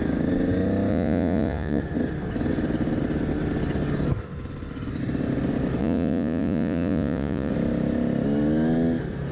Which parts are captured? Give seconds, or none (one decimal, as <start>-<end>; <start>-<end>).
0.0-0.9; 1.8-5.8; 7.5-9.3